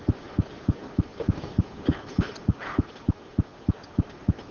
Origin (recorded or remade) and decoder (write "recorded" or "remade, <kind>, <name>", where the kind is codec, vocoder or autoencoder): recorded